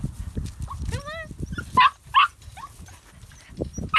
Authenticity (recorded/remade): recorded